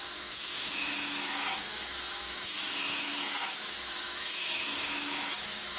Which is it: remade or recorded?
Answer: remade